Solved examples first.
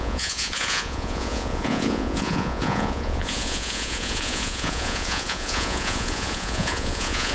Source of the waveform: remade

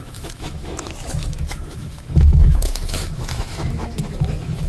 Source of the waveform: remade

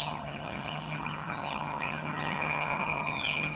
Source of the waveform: remade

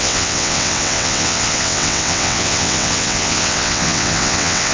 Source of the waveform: remade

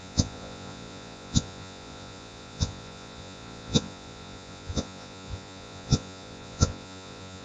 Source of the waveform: remade